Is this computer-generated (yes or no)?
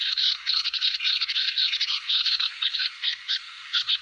yes